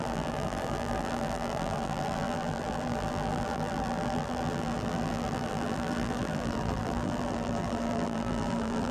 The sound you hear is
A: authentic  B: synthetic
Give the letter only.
B